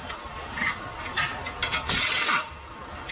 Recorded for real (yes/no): yes